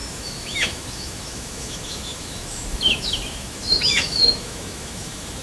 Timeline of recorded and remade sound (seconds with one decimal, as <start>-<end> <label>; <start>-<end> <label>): 0.0-5.4 remade